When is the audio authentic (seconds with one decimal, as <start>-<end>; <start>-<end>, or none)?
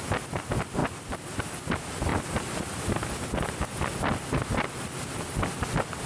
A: 0.0-6.1